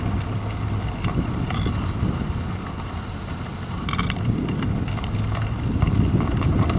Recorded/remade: recorded